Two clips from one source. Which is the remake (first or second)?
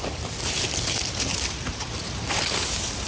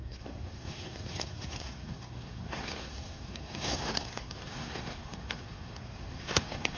second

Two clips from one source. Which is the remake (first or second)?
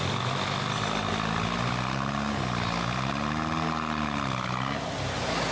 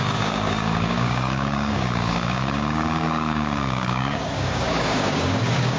second